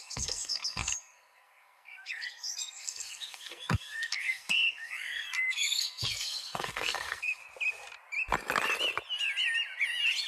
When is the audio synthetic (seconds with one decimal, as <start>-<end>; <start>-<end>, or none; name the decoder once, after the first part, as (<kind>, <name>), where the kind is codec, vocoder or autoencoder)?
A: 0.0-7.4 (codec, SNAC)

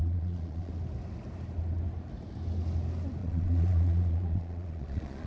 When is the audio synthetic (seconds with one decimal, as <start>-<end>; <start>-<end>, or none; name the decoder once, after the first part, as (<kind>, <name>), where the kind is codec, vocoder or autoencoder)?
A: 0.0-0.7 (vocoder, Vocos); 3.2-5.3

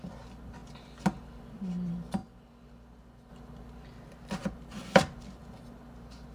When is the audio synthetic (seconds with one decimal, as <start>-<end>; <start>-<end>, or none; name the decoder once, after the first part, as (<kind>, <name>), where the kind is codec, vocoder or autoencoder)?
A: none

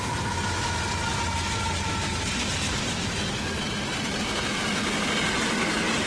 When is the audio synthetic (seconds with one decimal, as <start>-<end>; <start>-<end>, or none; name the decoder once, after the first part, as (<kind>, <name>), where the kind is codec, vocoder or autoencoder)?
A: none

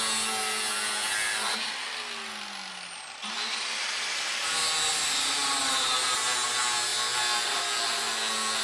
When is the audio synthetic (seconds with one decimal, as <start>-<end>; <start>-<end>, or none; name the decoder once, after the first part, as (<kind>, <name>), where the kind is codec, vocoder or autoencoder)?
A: none